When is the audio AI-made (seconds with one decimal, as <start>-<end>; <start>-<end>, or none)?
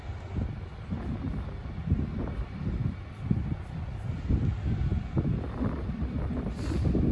none